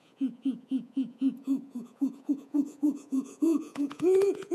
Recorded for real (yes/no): no